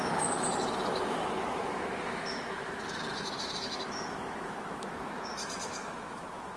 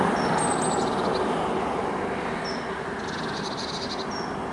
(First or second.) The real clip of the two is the second